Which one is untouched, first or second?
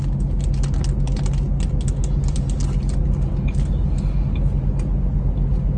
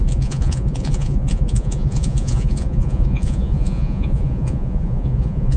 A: first